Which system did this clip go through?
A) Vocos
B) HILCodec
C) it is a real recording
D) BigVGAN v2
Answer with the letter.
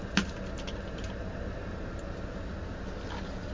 C